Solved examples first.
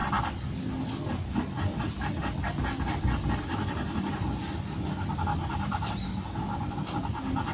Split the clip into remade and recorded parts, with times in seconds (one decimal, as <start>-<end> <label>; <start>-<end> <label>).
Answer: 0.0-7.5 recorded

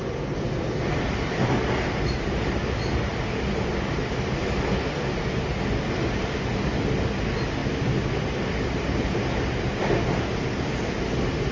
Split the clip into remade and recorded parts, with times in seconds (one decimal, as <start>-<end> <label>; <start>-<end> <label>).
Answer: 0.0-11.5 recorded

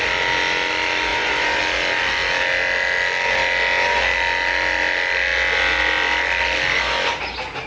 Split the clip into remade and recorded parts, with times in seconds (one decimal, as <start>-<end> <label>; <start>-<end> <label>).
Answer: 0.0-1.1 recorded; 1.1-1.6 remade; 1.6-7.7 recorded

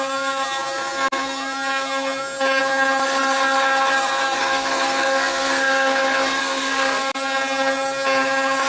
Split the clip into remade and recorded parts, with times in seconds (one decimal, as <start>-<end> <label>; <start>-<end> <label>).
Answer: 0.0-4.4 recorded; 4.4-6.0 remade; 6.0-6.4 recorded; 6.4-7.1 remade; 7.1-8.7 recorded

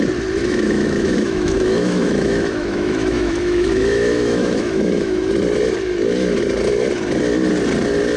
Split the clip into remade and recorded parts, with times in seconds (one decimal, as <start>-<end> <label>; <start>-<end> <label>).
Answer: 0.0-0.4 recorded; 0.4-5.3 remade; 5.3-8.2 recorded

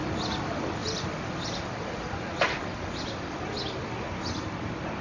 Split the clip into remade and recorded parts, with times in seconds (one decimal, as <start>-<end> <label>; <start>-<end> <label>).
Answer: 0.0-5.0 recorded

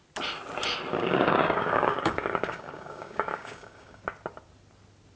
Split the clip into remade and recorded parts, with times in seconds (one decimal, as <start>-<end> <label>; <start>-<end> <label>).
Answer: 0.0-0.9 recorded; 0.9-4.0 remade; 4.0-5.2 recorded

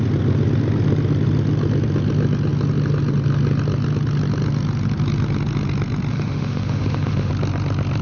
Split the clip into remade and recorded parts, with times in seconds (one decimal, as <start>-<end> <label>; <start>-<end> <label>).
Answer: 0.0-6.1 recorded; 6.1-7.3 remade; 7.3-8.0 recorded